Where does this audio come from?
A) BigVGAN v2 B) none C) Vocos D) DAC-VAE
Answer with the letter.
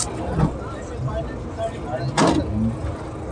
B